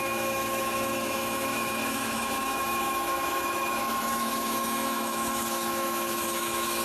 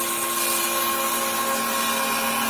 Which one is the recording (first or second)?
second